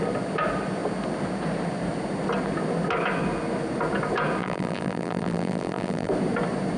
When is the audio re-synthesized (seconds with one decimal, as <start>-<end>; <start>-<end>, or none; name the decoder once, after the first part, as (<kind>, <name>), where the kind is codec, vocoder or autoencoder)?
4.4-6.1 (vocoder, BigVGAN v2)